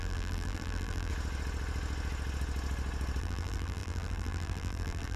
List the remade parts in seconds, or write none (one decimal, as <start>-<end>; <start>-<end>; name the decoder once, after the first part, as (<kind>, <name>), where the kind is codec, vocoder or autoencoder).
0.0-1.1 (vocoder, BigVGAN v2); 3.2-5.2